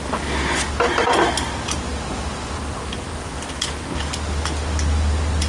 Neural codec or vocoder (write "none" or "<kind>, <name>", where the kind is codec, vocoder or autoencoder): none